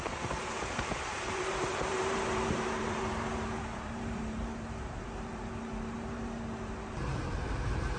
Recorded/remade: remade